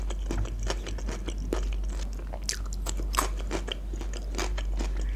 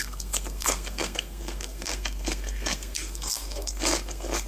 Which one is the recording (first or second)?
first